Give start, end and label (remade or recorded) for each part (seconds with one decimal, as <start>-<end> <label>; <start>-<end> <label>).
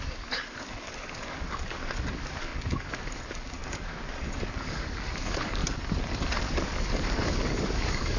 0.0-5.6 remade; 5.6-6.4 recorded; 6.4-8.2 remade